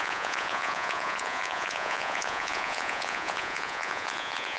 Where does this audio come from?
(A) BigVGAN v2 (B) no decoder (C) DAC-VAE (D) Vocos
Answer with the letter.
D